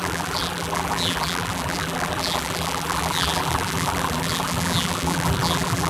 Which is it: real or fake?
fake